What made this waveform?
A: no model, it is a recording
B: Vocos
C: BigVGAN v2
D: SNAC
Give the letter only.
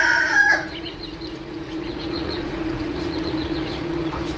B